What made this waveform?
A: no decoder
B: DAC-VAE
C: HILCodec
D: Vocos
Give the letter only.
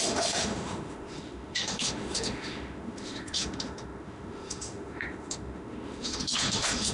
B